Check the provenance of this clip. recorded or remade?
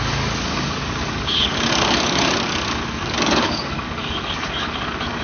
remade